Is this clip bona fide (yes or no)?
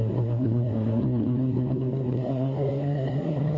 no